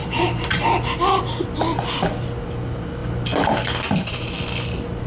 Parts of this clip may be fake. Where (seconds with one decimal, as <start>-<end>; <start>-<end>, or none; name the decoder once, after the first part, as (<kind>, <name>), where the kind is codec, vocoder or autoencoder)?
none